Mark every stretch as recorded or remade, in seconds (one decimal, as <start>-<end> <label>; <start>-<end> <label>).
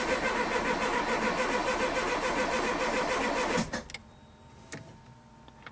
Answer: 0.0-5.7 recorded